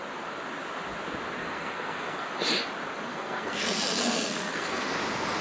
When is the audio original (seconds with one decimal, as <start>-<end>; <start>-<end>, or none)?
0.0-1.4; 2.3-3.1; 5.0-5.4